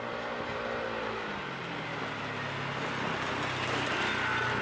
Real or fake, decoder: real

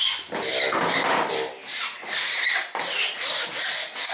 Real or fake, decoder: real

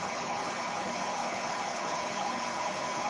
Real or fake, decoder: fake, codec, HILCodec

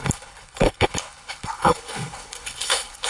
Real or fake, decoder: fake, codec, HILCodec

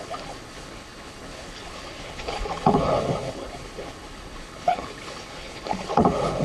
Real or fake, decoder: fake, codec, HILCodec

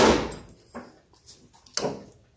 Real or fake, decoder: real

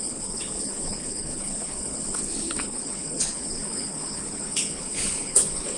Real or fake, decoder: fake, codec, HILCodec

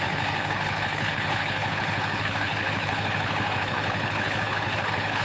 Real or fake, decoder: fake, codec, HILCodec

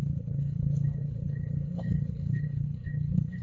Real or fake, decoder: fake, codec, HILCodec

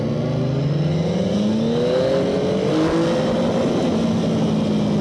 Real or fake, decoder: real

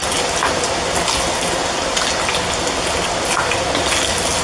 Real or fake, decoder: real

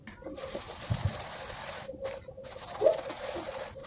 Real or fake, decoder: real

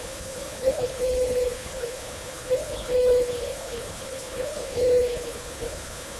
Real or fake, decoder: fake, codec, HILCodec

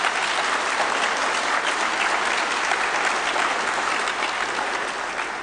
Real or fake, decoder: real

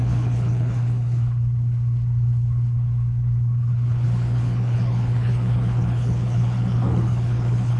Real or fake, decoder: fake, codec, HILCodec